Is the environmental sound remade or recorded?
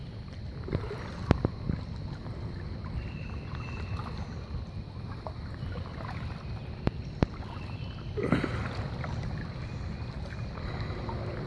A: recorded